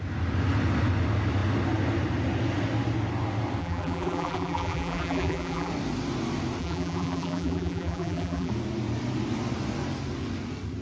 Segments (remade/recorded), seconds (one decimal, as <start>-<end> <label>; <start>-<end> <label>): 0.0-3.6 recorded; 3.6-5.7 remade; 5.7-6.6 recorded; 6.6-8.5 remade; 8.5-10.8 recorded